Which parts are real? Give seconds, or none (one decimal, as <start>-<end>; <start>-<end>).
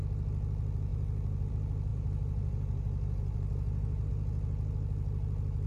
0.0-1.9; 4.1-5.7